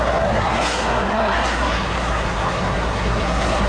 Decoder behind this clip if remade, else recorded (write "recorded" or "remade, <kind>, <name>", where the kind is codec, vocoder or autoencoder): remade, codec, SNAC